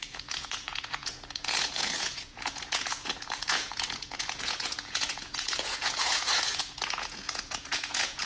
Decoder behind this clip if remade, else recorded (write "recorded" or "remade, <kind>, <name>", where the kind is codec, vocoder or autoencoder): remade, vocoder, Vocos